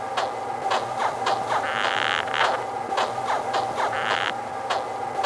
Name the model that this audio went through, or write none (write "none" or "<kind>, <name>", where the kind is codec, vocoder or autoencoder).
none